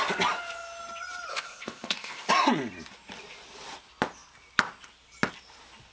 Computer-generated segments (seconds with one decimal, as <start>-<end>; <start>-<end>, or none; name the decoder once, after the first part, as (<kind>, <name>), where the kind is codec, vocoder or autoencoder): 1.3-2.3 (codec, ZipCodec)